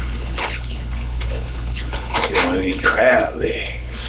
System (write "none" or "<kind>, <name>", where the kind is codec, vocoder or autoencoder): codec, HILCodec